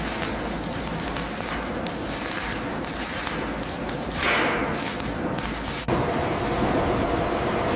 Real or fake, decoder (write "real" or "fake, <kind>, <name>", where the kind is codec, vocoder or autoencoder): real